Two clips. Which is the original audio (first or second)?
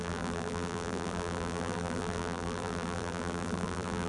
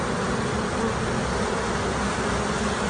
second